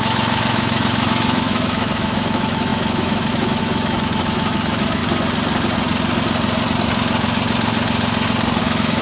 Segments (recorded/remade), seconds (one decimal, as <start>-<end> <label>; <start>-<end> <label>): 0.0-5.0 remade; 5.0-8.6 recorded; 8.6-9.0 remade